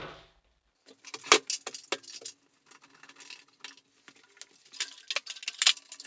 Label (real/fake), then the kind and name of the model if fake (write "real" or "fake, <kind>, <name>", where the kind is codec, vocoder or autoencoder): real